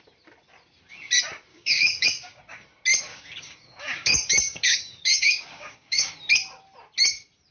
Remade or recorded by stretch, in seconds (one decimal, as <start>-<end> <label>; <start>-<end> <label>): 0.0-1.5 recorded; 1.5-2.4 remade; 2.4-3.1 recorded; 3.1-6.1 remade; 6.1-7.5 recorded